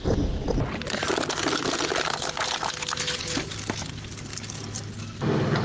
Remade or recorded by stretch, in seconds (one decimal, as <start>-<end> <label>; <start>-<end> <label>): 0.0-4.3 recorded; 4.3-5.0 remade; 5.0-5.6 recorded